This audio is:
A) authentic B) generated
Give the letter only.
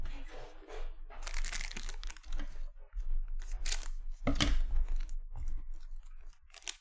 A